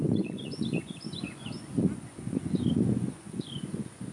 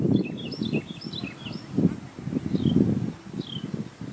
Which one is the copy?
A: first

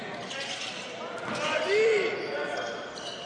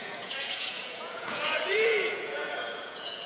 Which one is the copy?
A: second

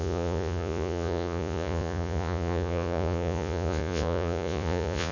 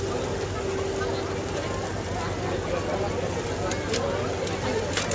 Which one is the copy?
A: first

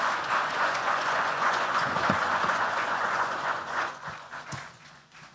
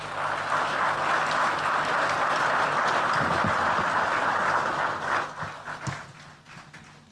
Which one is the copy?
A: first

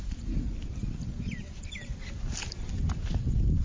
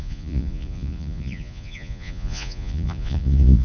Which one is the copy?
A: second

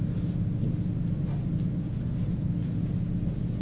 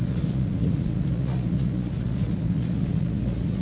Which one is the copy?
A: second